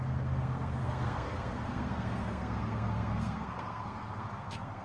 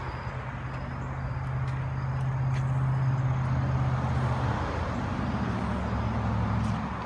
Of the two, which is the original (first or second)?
second